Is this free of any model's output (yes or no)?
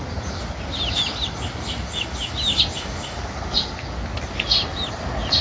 yes